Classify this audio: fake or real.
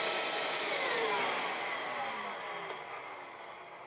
real